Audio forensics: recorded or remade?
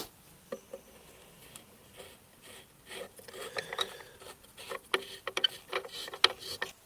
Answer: recorded